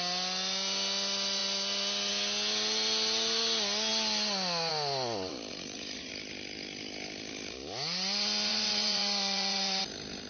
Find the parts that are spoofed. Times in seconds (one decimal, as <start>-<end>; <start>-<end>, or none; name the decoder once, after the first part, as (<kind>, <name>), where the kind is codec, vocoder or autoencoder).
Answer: 5.5-6.1 (vocoder, Vocos); 8.5-9.8

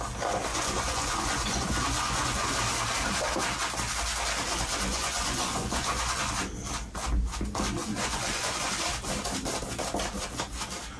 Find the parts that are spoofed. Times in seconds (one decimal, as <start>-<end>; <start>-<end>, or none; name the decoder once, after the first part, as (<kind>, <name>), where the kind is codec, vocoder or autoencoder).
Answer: 0.5-2.5 (vocoder, Vocos); 4.9-6.3; 7.8-8.7

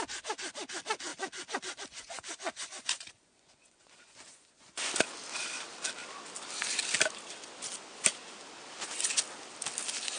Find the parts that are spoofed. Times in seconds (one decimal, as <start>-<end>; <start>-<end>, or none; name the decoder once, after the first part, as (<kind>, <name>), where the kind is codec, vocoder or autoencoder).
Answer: 1.1-4.9 (vocoder, Vocos)

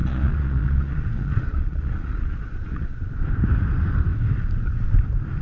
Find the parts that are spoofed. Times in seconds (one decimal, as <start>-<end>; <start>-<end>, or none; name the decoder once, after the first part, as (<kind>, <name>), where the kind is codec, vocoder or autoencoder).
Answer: 0.0-3.2 (vocoder, Vocos)

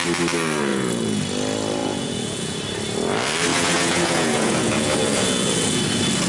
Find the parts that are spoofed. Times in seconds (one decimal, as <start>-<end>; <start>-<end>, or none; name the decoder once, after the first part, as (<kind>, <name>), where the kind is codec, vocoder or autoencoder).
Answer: 0.7-1.2 (vocoder, Vocos); 1.8-2.6; 3.5-5.8

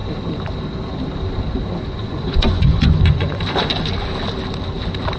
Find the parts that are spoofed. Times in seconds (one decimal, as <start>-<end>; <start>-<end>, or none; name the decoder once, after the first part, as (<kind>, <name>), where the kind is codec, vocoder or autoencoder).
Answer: 2.0-3.4 (vocoder, Vocos)

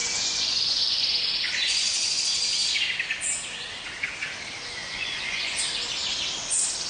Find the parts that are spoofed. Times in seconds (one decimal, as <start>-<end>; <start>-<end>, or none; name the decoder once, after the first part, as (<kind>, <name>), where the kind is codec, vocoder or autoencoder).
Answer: 0.0-1.2 (vocoder, Vocos); 1.6-2.2; 4.8-5.6

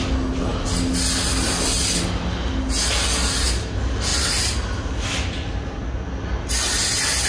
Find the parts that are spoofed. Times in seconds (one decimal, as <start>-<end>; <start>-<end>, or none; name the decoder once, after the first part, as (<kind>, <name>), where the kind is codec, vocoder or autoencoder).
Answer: none